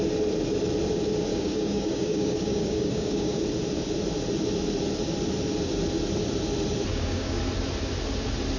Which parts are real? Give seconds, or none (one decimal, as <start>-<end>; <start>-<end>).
0.0-1.3; 3.4-6.9; 7.4-8.6

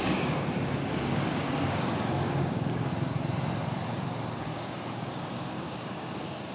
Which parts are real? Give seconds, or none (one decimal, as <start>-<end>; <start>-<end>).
2.9-4.4

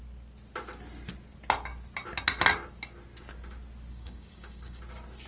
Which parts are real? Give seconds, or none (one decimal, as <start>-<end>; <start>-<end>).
0.0-3.9; 4.8-5.3

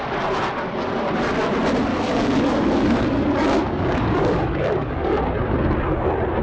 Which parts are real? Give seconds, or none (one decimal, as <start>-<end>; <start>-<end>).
0.0-1.9; 5.2-6.4

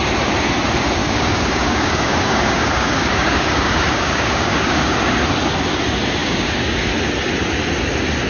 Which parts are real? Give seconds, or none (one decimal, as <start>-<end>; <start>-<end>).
0.0-1.0; 5.2-6.2; 6.9-8.3

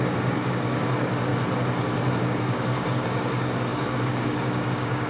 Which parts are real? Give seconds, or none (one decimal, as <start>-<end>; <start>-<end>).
1.3-2.2

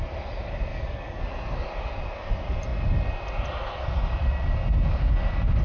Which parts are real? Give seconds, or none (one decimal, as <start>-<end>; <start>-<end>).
0.0-0.7; 1.2-5.6